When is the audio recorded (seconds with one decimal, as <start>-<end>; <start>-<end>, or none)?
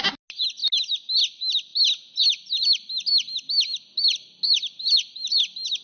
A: 0.0-5.8